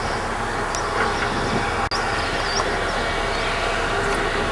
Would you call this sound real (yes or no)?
yes